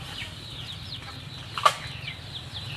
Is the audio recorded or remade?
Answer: recorded